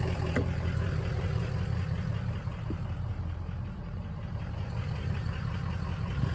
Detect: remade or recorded remade